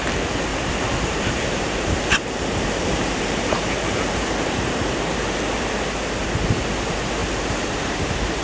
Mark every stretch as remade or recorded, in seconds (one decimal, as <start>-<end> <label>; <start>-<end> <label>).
0.0-0.5 recorded; 0.5-5.2 remade; 5.2-7.2 recorded; 7.2-8.4 remade